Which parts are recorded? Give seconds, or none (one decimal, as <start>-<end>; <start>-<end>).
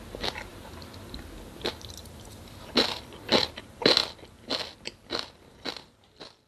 4.0-5.4